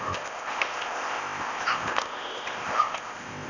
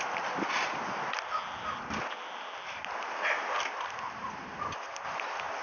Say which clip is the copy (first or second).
first